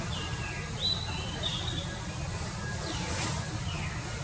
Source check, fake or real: real